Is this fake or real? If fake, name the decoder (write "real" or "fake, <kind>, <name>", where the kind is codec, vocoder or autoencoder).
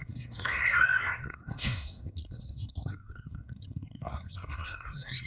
fake, codec, SNAC